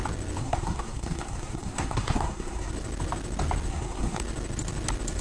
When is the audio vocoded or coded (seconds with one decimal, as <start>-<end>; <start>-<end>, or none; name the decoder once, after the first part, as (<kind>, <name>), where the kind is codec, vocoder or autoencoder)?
0.4-2.7 (codec, SNAC); 3.7-4.2